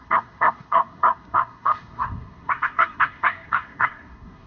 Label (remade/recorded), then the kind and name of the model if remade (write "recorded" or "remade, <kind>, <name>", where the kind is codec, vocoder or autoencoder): remade, codec, SNAC